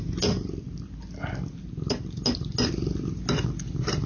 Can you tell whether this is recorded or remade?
recorded